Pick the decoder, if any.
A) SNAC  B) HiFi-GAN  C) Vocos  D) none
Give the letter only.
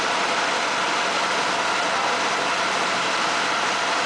D